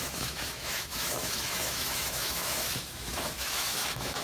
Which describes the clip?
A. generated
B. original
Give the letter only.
A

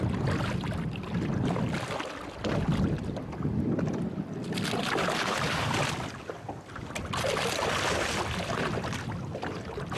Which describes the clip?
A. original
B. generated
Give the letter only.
A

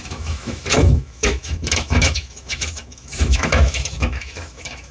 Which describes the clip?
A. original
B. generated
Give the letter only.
B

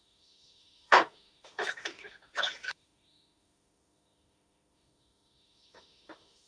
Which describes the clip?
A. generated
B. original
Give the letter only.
A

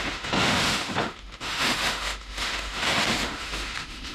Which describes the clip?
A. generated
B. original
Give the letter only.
A